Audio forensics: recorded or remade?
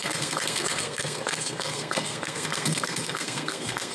remade